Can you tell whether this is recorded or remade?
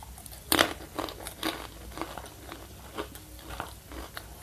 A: recorded